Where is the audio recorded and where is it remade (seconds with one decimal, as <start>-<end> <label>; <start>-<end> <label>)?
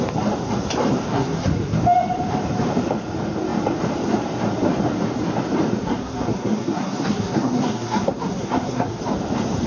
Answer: 0.0-1.1 recorded; 1.1-1.8 remade; 1.8-5.8 recorded; 5.8-9.0 remade; 9.0-9.7 recorded